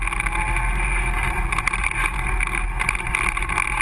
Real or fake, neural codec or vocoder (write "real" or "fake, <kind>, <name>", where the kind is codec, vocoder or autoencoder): real